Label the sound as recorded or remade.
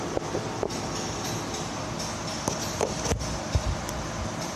recorded